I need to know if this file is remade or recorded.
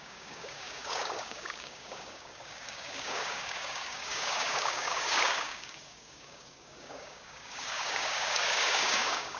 remade